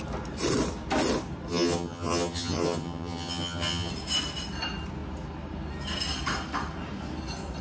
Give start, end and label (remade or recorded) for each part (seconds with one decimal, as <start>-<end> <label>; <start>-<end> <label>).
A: 0.0-1.5 recorded; 1.5-3.9 remade; 3.9-7.6 recorded